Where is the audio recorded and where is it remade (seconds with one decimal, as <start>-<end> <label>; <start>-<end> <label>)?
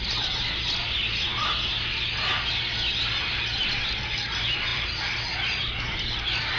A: 0.0-4.7 recorded; 4.7-5.3 remade; 5.3-6.6 recorded